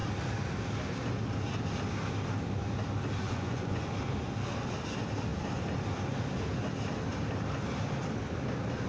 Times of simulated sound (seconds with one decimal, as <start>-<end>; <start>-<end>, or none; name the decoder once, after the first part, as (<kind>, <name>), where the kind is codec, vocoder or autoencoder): 3.2-3.9 (vocoder, Vocos)